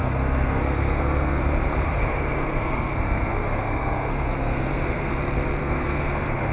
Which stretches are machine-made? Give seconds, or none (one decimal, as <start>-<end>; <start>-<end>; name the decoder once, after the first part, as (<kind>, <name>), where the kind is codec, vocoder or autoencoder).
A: 0.0-1.4 (codec, SNAC); 1.9-5.1; 5.6-6.1